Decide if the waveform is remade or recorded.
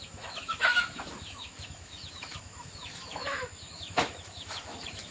remade